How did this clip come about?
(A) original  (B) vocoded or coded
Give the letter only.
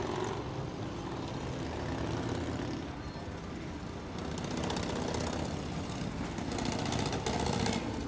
A